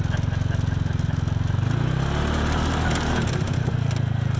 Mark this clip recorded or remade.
recorded